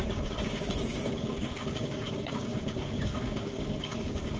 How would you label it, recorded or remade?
remade